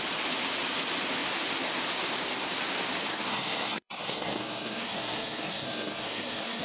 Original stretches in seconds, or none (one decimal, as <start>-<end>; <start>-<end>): 0.0-3.1